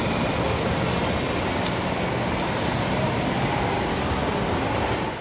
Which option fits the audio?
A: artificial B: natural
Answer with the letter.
B